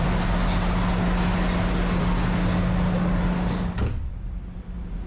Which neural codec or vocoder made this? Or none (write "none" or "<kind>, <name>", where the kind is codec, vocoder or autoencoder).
none